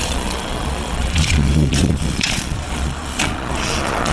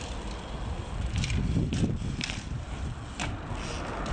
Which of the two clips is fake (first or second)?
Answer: first